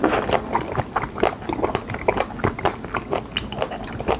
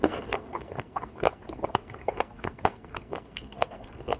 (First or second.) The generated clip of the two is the second